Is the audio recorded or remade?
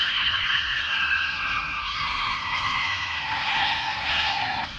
remade